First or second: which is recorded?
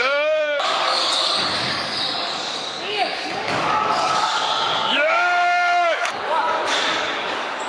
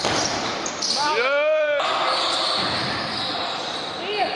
second